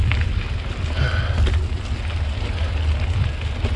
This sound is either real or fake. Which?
real